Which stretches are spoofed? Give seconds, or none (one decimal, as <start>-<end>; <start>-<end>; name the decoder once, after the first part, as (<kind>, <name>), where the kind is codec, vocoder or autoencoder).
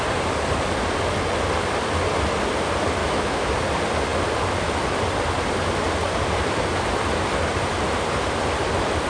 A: 3.0-3.5 (autoencoder, DAC-VAE)